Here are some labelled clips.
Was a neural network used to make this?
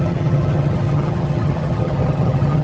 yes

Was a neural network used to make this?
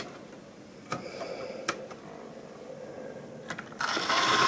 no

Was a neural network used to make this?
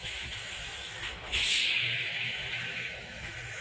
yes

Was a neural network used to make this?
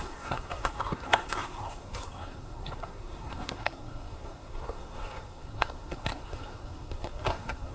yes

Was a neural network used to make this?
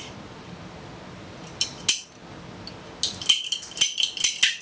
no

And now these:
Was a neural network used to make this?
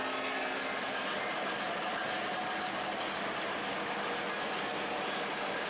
no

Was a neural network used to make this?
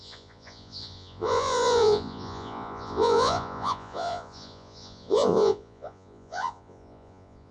yes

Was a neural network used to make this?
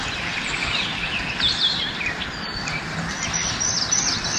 no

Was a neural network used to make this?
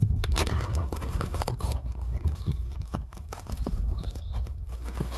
yes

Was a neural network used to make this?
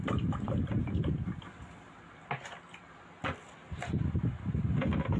no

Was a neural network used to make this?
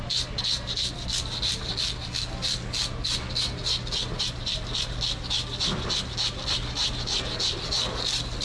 no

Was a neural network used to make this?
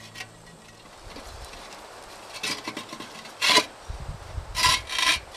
no